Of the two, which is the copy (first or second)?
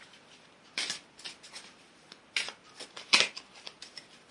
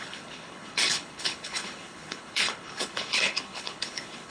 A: second